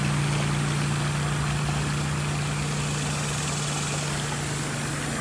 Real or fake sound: real